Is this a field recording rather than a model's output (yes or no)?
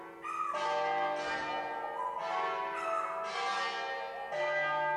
yes